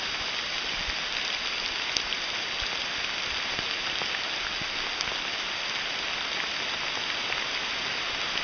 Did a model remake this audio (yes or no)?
no